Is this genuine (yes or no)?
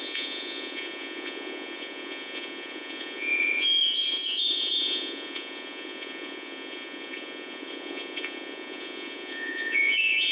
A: no